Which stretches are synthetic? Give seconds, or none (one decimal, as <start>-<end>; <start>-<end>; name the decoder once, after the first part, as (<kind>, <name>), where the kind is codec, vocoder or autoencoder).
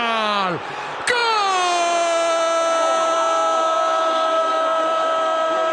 none